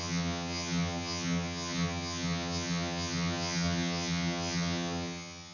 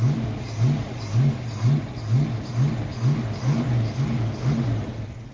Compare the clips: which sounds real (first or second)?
second